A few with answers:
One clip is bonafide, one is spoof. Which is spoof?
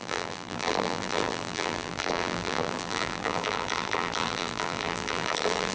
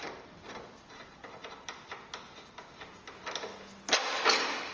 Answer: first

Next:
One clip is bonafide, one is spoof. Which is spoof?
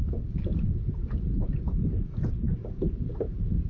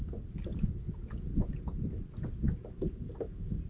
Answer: first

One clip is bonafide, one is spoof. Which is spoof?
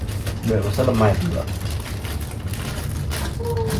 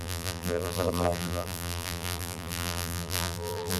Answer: second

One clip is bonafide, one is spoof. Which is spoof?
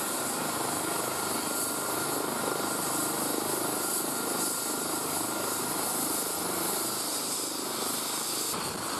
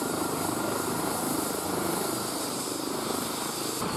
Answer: second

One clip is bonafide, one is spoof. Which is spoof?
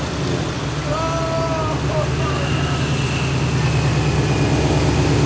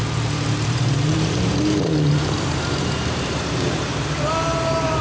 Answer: second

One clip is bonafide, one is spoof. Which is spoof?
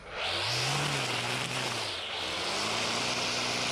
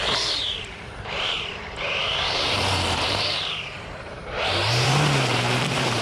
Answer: second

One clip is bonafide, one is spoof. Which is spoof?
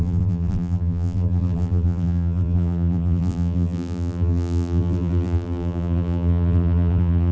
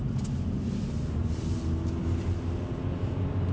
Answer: first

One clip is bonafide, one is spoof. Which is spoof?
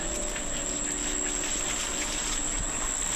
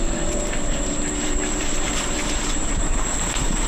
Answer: second